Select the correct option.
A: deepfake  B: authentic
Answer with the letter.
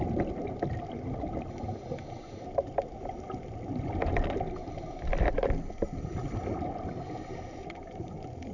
B